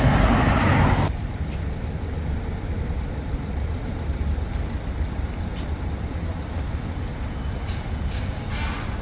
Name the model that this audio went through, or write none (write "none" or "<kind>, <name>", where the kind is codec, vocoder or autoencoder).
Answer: none